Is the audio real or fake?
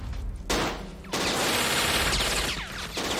real